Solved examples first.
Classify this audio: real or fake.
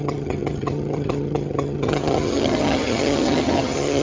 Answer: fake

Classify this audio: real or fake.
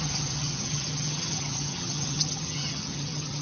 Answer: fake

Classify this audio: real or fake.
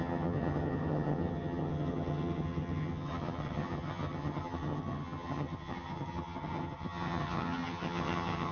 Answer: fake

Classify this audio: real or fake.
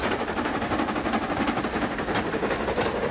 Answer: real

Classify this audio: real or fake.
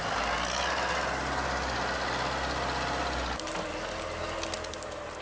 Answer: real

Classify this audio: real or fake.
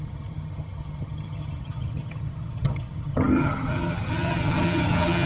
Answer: fake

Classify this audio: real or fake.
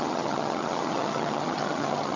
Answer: fake